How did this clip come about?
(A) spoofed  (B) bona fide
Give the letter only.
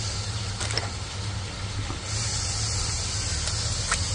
B